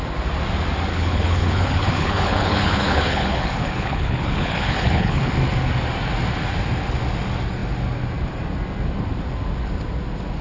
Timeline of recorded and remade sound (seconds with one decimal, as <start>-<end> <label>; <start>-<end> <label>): 0.0-0.9 recorded; 0.9-5.3 remade; 5.3-10.4 recorded